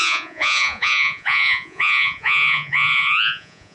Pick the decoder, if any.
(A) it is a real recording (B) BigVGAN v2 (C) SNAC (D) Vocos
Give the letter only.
D